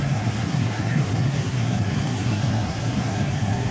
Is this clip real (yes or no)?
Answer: no